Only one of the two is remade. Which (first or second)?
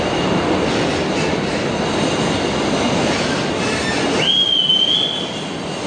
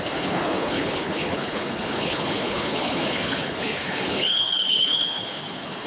second